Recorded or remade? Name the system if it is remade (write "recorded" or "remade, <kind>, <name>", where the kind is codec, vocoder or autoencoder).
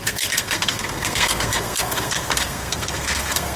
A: remade, codec, SNAC